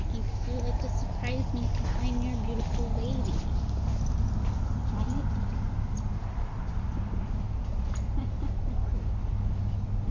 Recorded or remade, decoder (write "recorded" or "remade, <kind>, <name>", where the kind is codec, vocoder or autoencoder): recorded